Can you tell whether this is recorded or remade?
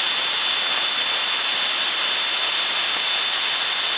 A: recorded